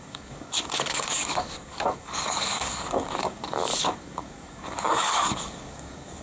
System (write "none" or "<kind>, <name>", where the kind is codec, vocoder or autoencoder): codec, DAC